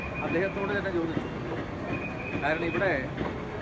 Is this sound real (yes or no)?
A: yes